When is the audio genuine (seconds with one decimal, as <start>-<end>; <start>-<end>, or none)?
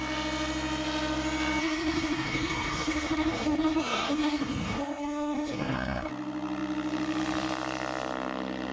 0.0-1.6; 6.1-8.7